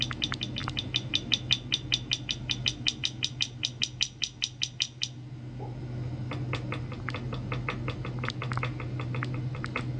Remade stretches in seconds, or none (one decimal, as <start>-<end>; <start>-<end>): none